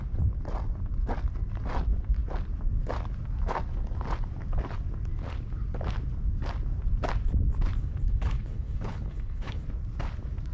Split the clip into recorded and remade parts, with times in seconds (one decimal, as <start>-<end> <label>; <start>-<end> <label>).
0.0-7.8 recorded; 7.8-9.6 remade; 9.6-10.5 recorded